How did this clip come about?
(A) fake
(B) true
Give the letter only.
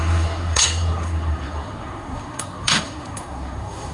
A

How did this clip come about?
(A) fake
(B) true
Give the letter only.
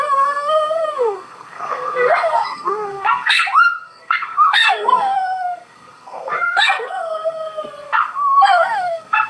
A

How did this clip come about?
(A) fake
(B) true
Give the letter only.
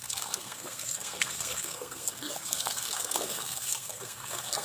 A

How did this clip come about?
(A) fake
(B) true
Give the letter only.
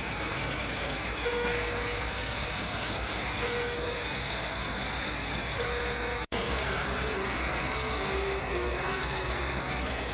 A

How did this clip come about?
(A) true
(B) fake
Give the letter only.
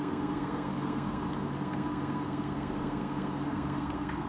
B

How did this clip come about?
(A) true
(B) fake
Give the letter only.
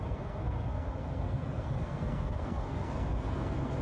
B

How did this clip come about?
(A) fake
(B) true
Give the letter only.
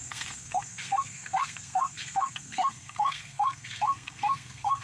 A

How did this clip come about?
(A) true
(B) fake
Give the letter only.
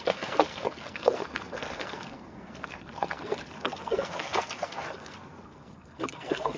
B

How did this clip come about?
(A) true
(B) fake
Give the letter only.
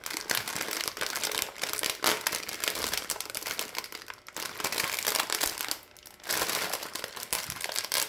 A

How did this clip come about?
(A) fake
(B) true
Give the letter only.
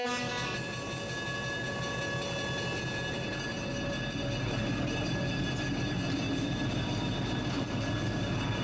B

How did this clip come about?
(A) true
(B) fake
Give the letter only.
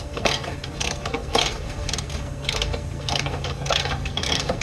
B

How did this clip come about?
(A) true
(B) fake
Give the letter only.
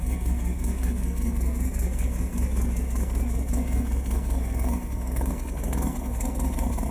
B